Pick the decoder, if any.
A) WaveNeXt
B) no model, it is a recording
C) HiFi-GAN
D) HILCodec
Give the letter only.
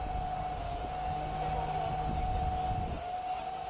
B